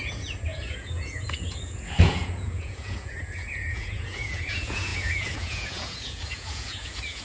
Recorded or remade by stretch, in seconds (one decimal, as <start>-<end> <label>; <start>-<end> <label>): 0.0-7.2 remade